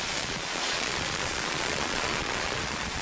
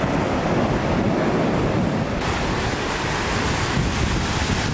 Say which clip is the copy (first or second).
first